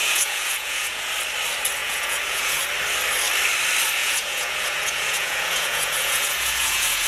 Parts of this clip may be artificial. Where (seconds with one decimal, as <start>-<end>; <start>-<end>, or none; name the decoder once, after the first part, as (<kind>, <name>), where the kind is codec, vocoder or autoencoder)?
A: 0.0-1.1 (vocoder, Vocos); 1.8-2.6; 4.0-7.1